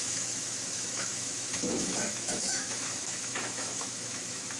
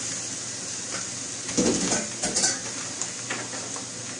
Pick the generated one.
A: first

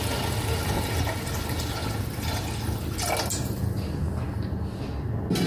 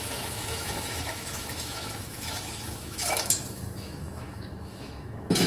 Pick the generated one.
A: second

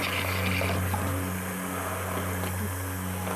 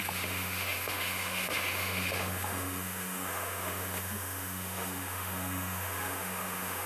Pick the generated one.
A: second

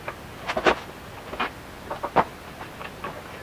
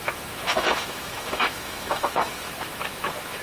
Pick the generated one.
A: second